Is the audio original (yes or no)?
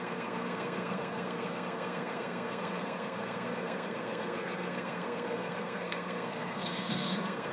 no